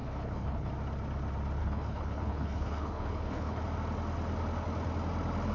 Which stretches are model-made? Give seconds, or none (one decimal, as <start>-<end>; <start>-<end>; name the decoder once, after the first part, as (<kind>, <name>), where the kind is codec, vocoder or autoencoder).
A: 0.0-0.7 (codec, HILCodec); 1.6-3.6